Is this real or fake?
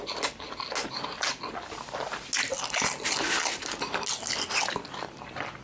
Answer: real